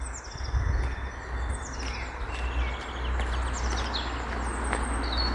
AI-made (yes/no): no